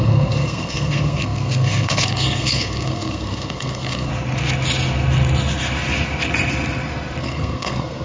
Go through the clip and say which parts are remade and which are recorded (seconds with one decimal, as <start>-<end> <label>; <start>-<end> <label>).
0.0-4.1 remade; 4.1-7.2 recorded; 7.2-8.0 remade